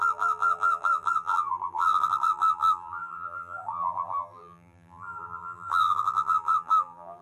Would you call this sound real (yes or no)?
no